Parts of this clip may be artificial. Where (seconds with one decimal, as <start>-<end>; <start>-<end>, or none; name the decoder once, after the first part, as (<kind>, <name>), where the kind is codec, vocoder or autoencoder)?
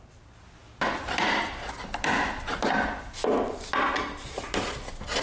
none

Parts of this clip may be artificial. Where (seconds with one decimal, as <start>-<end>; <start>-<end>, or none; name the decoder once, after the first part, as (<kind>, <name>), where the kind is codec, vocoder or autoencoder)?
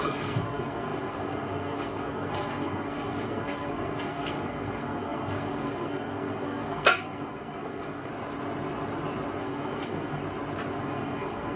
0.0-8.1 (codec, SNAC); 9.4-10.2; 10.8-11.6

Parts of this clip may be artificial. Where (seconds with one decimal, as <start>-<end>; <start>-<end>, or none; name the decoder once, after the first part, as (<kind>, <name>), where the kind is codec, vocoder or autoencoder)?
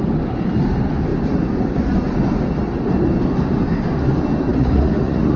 4.5-5.4 (vocoder, Vocos)